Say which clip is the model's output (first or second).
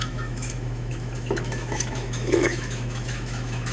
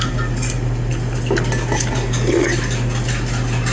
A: first